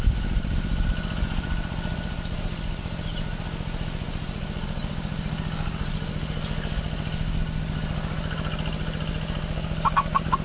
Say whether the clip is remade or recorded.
recorded